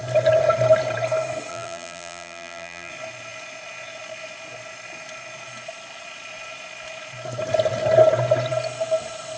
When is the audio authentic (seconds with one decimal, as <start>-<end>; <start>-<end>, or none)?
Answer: 0.0-1.5; 2.9-9.4